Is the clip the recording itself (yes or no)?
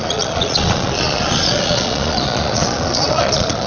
no